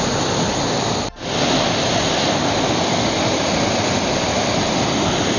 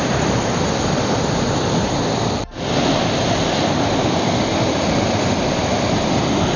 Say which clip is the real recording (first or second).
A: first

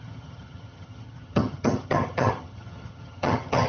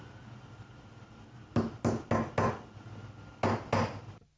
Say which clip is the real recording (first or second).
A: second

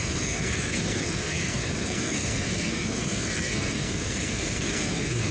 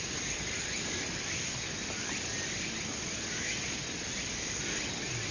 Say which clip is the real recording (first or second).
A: second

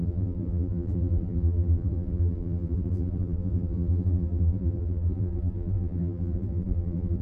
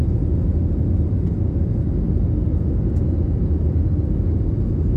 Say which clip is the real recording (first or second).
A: second